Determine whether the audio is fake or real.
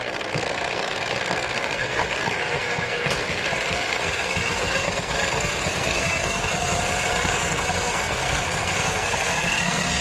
fake